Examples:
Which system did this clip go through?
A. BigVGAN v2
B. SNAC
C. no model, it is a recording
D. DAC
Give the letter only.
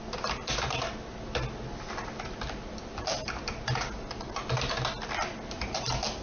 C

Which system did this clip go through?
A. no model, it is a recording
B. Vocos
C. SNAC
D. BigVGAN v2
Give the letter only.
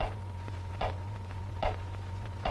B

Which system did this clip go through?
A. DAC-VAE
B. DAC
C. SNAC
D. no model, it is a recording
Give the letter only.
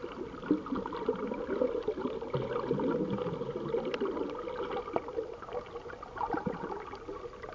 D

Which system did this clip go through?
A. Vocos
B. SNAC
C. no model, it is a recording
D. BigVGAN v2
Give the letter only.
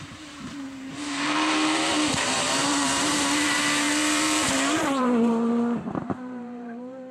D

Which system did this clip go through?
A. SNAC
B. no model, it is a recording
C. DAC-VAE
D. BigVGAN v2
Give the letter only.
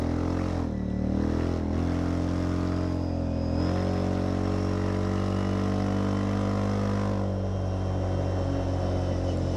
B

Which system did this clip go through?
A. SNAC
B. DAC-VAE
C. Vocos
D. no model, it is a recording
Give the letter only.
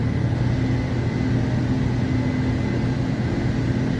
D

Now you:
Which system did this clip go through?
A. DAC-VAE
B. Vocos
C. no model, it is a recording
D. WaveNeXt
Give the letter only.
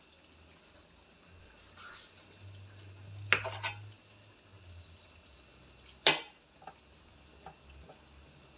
C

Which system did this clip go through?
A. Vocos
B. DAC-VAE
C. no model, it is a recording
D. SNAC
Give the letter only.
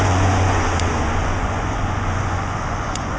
A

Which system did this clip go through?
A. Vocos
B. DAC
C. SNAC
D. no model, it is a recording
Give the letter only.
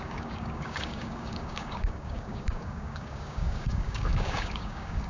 B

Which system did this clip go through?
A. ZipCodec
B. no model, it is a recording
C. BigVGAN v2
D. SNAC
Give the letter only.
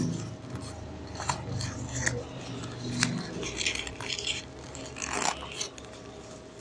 B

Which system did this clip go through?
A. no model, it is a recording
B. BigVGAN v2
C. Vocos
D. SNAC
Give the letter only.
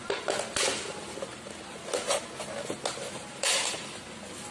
A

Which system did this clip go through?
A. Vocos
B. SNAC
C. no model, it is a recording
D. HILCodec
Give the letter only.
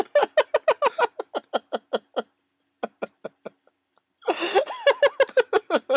C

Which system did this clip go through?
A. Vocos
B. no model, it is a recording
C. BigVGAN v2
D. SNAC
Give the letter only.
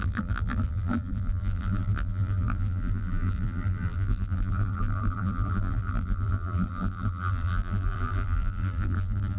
C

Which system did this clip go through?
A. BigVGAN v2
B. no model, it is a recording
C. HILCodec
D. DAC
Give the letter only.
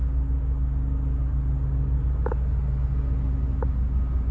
B